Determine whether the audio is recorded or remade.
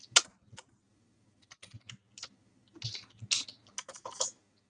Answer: recorded